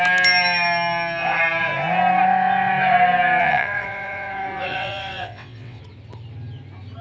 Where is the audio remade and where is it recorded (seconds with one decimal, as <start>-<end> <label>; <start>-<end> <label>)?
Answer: 0.0-3.4 recorded; 3.4-5.8 remade; 5.8-7.0 recorded

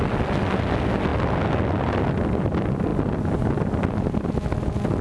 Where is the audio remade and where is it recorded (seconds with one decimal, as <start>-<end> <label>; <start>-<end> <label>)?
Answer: 0.0-5.0 recorded

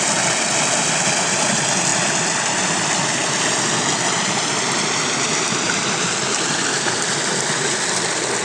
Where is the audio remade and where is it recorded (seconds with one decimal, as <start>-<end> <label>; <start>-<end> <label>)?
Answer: 0.0-8.4 recorded

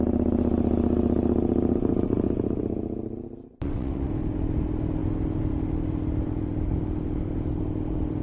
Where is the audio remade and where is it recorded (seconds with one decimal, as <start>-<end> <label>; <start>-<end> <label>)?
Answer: 0.0-3.5 recorded; 3.5-4.1 remade; 4.1-8.2 recorded

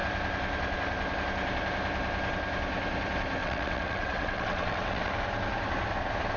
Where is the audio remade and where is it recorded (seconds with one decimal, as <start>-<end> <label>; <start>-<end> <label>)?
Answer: 0.0-3.4 recorded; 3.4-5.1 remade; 5.1-6.4 recorded

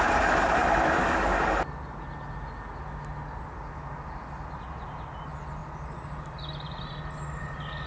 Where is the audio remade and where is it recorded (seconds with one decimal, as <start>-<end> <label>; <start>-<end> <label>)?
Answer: 0.0-7.9 recorded

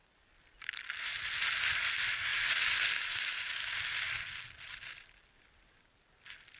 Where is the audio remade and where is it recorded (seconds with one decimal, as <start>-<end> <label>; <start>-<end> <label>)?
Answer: 0.0-6.6 recorded

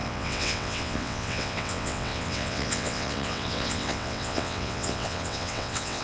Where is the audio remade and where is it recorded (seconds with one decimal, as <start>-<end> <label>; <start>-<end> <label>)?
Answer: 0.0-6.0 remade